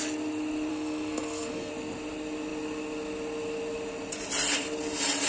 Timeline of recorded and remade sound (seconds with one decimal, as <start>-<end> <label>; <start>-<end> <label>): 0.0-0.7 recorded; 0.7-1.7 remade; 1.7-5.3 recorded